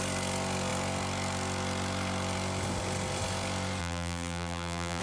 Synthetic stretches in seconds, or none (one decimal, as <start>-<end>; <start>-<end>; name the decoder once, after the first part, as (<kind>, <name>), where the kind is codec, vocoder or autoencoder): 3.8-5.0 (vocoder, BigVGAN v2)